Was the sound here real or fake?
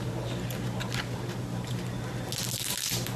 real